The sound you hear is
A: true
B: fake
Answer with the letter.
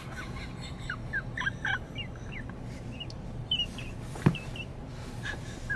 A